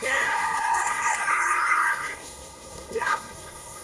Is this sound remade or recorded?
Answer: remade